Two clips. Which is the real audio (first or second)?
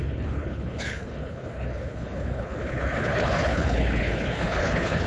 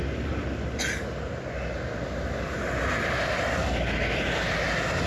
second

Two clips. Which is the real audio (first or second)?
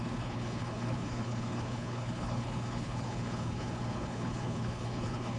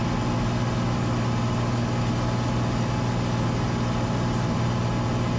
second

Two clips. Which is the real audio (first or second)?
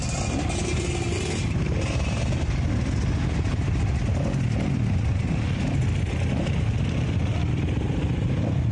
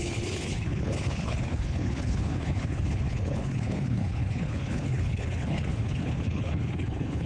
first